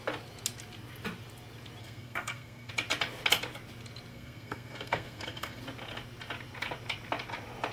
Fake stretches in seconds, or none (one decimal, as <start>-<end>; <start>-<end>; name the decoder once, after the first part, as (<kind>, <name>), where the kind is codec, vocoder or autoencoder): 1.8-2.7 (codec, SNAC); 4.1-5.6